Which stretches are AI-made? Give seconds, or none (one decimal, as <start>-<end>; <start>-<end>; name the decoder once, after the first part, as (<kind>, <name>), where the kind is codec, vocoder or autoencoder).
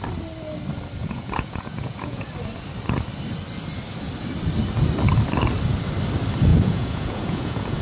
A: 1.0-2.3 (vocoder, Vocos); 6.5-7.8